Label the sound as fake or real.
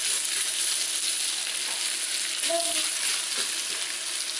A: real